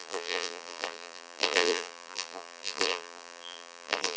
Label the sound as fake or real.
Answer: fake